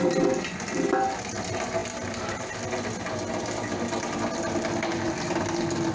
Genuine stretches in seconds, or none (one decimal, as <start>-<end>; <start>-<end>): 0.0-5.9